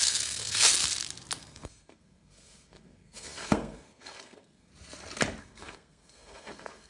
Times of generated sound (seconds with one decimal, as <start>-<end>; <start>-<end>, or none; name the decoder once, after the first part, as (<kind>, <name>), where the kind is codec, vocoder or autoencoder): 0.0-0.7 (codec, SNAC); 1.4-4.7; 5.4-6.9